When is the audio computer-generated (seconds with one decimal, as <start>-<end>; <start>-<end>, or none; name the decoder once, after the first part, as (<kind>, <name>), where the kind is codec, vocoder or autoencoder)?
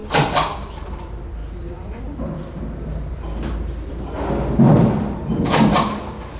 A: 1.4-5.2 (vocoder, BigVGAN v2)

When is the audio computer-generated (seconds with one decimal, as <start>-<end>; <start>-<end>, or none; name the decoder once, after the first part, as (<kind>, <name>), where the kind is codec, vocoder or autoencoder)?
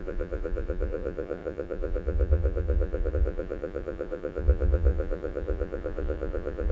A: 0.0-6.7 (vocoder, Vocos)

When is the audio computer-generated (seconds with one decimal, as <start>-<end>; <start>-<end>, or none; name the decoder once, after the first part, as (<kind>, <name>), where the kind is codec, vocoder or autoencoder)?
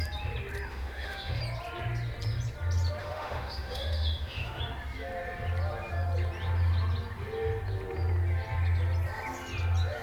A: 0.7-1.4 (autoencoder, DAC-VAE); 3.0-4.6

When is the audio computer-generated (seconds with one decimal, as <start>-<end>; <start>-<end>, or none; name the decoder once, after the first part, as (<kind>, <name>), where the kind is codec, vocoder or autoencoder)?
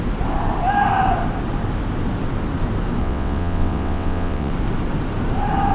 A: 3.0-4.5 (vocoder, WaveNeXt)